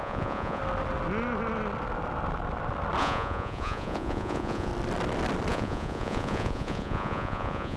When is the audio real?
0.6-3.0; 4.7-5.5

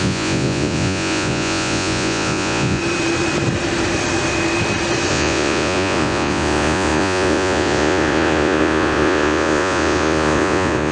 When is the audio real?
2.8-5.1

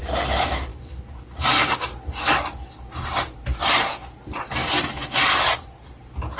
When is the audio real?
0.0-6.4

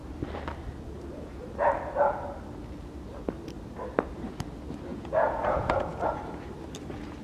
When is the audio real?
0.0-4.9; 6.2-7.2